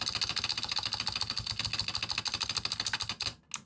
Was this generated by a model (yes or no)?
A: no